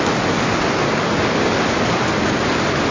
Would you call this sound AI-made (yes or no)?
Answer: no